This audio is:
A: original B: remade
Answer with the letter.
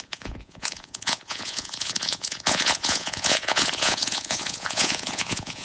B